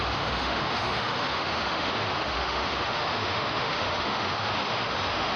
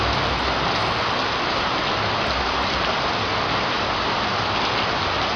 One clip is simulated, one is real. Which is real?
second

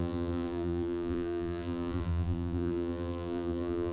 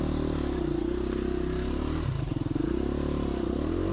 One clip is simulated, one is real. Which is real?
second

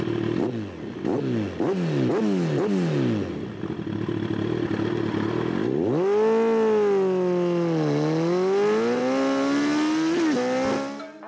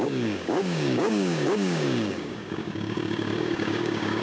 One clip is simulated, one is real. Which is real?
first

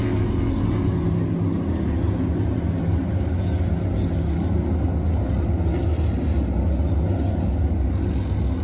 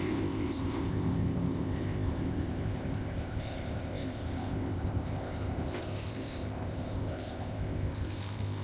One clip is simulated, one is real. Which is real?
first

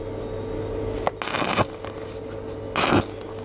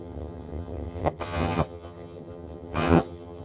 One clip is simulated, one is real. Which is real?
first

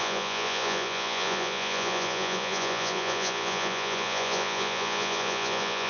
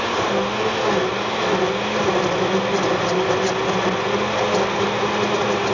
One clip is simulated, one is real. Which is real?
second